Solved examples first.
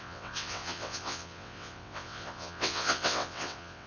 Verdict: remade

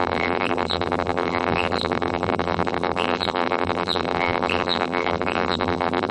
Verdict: remade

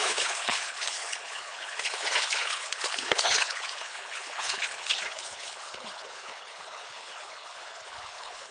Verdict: remade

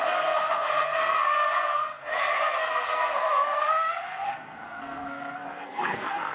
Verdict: remade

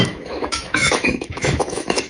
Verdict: remade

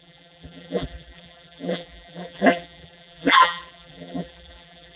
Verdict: remade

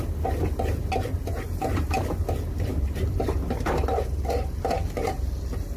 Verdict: recorded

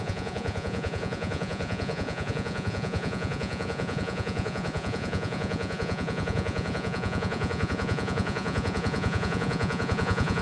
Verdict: remade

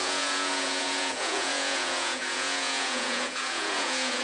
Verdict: remade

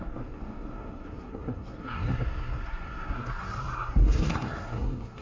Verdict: remade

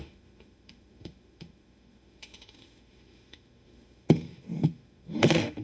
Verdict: remade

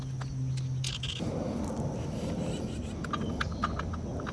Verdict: recorded